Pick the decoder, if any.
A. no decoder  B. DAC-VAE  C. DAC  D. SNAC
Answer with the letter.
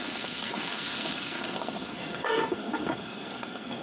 D